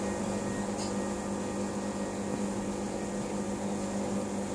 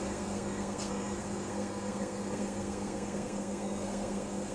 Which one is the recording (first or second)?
first